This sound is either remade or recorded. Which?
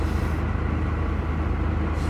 recorded